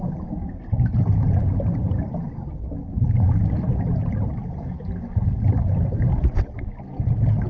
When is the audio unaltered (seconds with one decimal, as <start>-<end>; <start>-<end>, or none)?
0.0-7.5